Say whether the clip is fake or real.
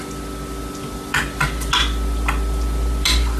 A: real